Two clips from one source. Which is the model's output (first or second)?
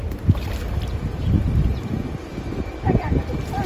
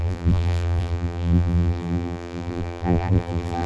second